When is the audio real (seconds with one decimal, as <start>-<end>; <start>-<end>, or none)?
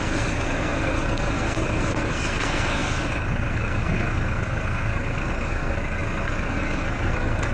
none